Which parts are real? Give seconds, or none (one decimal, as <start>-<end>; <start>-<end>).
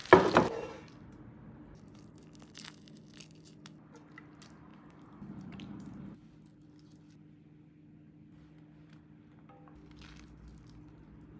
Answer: 0.0-4.7; 6.3-11.4